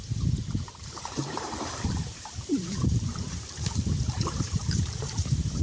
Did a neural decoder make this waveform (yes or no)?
yes